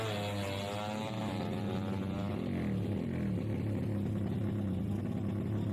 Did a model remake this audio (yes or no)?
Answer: no